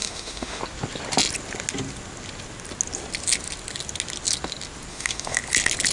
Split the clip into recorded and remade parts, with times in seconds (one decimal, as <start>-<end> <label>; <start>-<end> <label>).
0.0-0.6 remade; 0.6-4.9 recorded; 4.9-5.4 remade; 5.4-5.9 recorded